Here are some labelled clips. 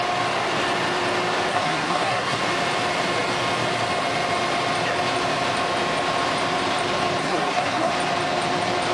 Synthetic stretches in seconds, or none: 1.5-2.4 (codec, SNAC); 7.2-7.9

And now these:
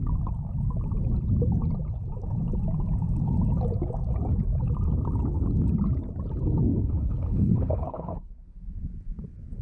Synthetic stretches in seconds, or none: 6.7-8.3 (codec, HILCodec)